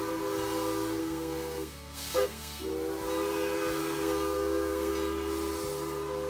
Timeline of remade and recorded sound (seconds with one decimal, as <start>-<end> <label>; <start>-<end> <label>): 0.0-1.0 recorded; 1.0-2.7 remade; 2.7-3.8 recorded; 3.8-4.9 remade; 4.9-6.3 recorded